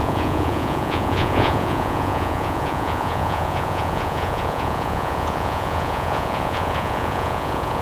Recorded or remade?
remade